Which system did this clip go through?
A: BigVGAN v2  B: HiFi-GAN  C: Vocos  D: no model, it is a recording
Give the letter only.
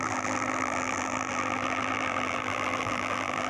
A